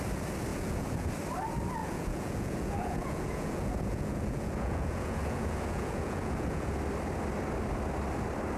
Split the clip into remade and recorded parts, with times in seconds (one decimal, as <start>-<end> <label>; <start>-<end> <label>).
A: 0.0-0.5 recorded; 0.5-1.1 remade; 1.1-1.8 recorded; 1.8-6.7 remade; 6.7-8.6 recorded

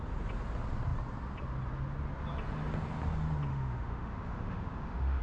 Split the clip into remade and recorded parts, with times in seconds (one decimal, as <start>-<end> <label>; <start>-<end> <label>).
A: 0.0-3.5 recorded; 3.5-5.2 remade

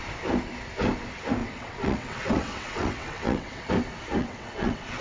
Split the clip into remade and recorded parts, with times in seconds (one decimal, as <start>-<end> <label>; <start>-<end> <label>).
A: 0.0-1.4 recorded; 1.4-3.7 remade; 3.7-4.2 recorded; 4.2-5.0 remade

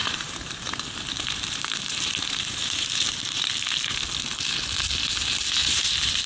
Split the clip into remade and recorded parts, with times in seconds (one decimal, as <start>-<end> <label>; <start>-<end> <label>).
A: 0.0-3.5 remade; 3.5-5.6 recorded; 5.6-6.3 remade

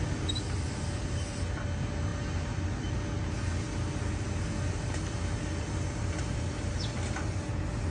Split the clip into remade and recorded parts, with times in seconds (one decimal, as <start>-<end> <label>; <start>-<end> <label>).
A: 0.0-7.9 recorded

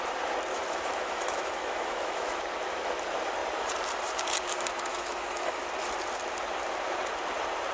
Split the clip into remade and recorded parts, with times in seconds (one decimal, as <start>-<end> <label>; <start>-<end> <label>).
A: 0.0-0.5 recorded; 0.5-2.4 remade; 2.4-4.9 recorded; 4.9-5.6 remade; 5.6-7.7 recorded

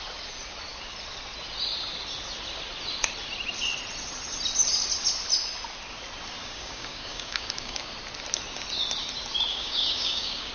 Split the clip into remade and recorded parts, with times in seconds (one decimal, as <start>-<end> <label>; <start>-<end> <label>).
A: 0.0-6.4 recorded; 6.4-7.9 remade; 7.9-9.5 recorded; 9.5-10.5 remade

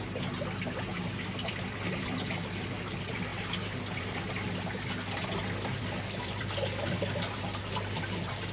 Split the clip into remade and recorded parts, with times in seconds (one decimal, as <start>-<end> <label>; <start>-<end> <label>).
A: 0.0-3.3 remade; 3.3-4.0 recorded; 4.0-8.5 remade